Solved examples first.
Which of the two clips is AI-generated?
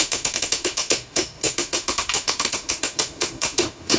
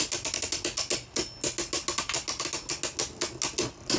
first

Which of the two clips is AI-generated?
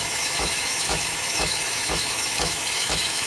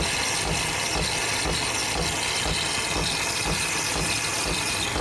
first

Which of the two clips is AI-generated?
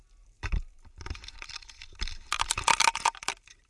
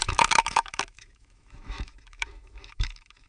second